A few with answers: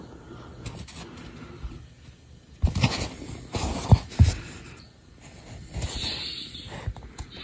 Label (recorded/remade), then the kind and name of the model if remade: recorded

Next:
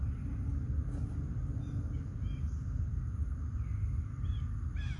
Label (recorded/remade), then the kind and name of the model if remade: recorded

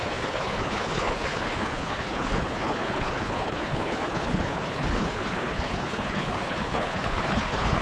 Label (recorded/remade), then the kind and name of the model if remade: remade, codec, HILCodec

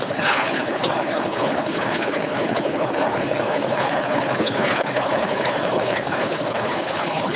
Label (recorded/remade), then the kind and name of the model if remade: remade, codec, HILCodec